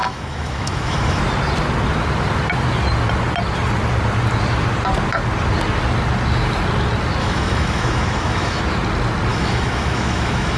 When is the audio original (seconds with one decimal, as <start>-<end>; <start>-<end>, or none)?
1.2-7.2; 8.6-9.3